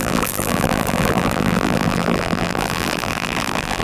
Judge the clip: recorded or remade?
remade